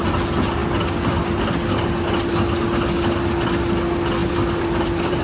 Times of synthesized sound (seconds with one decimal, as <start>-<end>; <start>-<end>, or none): 4.2-5.2